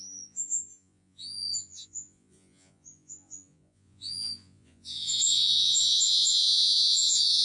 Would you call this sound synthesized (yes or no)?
yes